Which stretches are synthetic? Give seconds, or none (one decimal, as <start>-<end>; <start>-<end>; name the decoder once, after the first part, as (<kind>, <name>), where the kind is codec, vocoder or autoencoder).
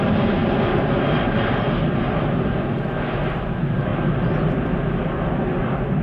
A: none